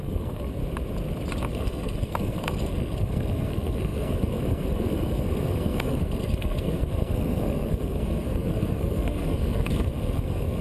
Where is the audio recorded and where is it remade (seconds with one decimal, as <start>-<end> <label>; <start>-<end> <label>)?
0.0-0.6 remade; 0.6-1.5 recorded; 1.5-10.6 remade